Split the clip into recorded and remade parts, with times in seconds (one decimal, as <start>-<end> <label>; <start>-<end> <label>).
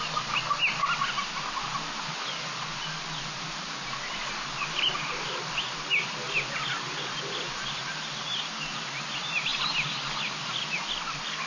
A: 0.0-11.5 recorded